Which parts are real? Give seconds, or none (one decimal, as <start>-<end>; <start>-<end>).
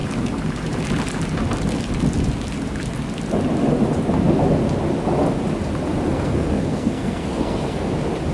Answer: 0.0-6.1; 7.9-8.3